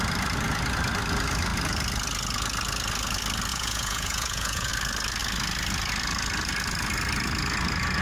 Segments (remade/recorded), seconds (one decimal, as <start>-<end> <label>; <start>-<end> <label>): 0.0-3.5 recorded; 3.5-4.7 remade; 4.7-8.0 recorded